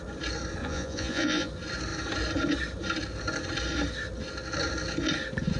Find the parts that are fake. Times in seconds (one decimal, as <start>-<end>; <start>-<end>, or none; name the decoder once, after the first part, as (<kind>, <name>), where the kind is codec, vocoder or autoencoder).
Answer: 0.6-1.5 (vocoder, Vocos)